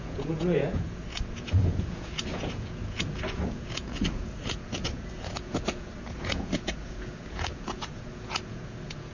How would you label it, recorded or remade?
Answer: remade